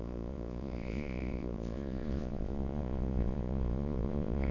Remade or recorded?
remade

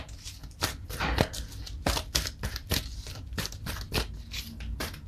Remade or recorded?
remade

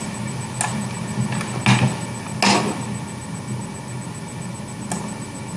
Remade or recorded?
recorded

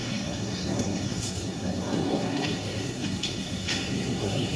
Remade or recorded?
remade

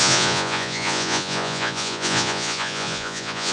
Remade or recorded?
remade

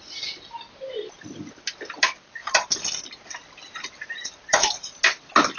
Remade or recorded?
recorded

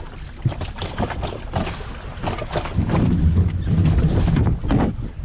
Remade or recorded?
recorded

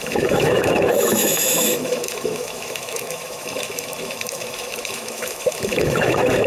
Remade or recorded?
remade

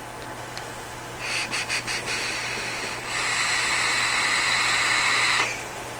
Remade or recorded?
recorded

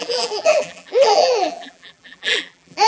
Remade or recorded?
remade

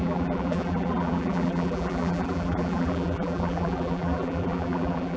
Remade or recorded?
remade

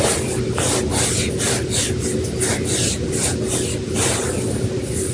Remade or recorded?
recorded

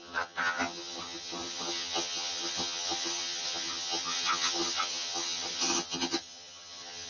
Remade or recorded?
remade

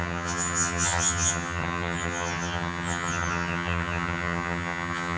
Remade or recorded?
remade